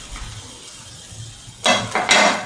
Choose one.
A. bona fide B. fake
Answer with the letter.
A